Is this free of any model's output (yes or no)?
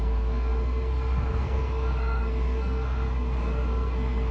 no